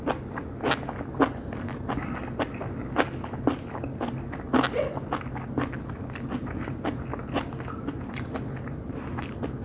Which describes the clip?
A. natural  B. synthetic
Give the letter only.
A